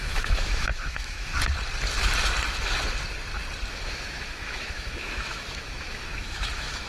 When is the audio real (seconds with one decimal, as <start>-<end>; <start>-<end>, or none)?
1.3-3.7